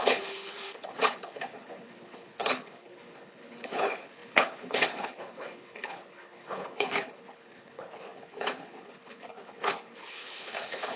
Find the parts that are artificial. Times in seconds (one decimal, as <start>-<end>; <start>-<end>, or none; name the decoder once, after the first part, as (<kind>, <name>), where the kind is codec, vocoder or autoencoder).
0.0-11.0 (codec, HILCodec)